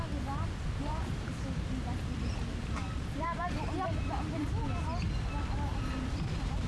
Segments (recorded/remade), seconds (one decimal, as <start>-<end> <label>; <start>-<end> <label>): 0.0-0.9 recorded; 0.9-4.6 remade; 4.6-5.7 recorded; 5.7-6.7 remade